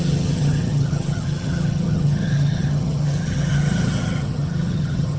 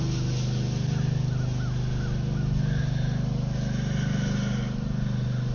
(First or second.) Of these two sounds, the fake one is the first